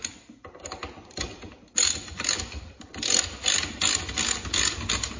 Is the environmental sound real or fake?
real